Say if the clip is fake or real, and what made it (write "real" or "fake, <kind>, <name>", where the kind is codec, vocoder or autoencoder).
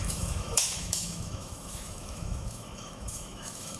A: fake, autoencoder, DAC-VAE